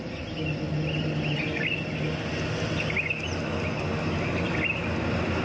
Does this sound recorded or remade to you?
recorded